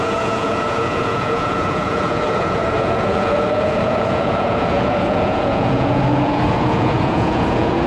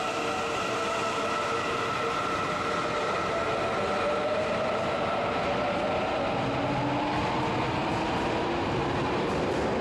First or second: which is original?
second